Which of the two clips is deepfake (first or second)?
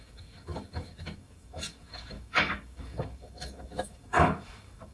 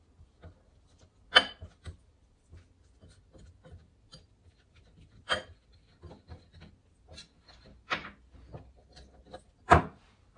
first